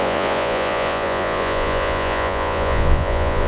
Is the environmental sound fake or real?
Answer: fake